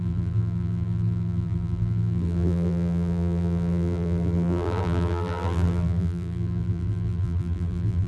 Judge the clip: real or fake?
fake